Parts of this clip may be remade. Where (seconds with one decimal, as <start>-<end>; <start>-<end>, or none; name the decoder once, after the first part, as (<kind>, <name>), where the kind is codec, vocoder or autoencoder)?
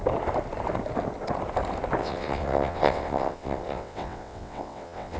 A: 2.0-5.2 (vocoder, WaveNeXt)